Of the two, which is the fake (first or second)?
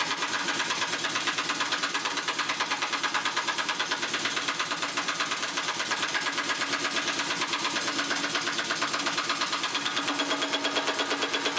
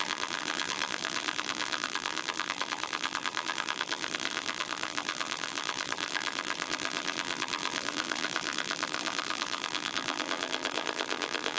second